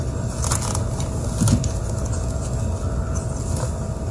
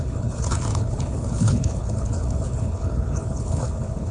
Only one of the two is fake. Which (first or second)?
second